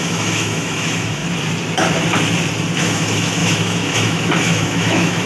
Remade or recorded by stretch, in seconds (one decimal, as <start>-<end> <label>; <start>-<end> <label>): 0.0-1.2 remade; 1.2-2.8 recorded; 2.8-5.3 remade